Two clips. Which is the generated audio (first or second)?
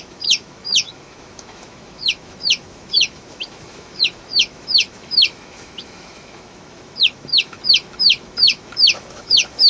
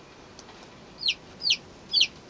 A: first